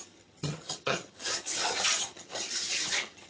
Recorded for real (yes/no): no